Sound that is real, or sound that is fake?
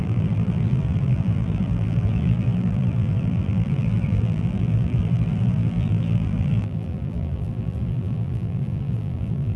fake